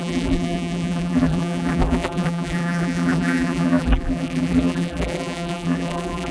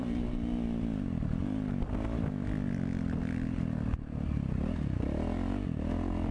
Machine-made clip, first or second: first